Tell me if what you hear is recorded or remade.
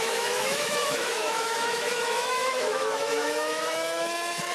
remade